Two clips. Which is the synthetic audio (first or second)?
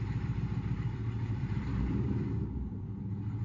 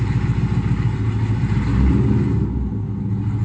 first